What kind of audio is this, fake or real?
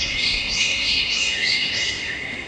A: fake